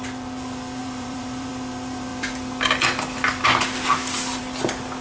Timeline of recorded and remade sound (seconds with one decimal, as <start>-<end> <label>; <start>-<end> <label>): 0.0-0.8 recorded; 0.8-1.5 remade; 1.5-5.0 recorded

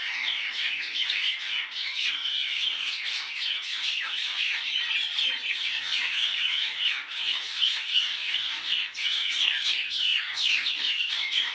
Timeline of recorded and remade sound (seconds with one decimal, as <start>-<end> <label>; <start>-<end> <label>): 0.0-4.7 remade; 4.7-5.5 recorded; 5.5-11.5 remade

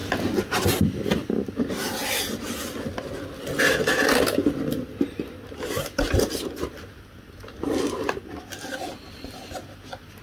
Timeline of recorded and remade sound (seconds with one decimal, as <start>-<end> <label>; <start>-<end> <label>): 0.0-10.2 recorded

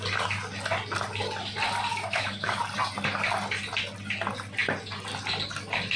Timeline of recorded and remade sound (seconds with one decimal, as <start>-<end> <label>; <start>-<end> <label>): 0.0-1.9 recorded; 1.9-2.6 remade; 2.6-6.0 recorded